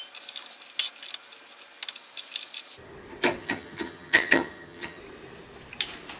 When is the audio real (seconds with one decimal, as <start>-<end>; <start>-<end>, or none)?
0.0-3.4; 5.0-6.2